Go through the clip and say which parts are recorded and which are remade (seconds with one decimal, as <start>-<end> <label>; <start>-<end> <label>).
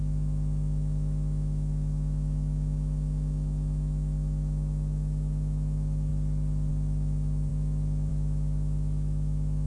0.0-6.1 remade; 6.1-6.7 recorded; 6.7-9.7 remade